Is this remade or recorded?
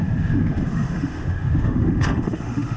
remade